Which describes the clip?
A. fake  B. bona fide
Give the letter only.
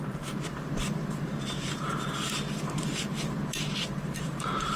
A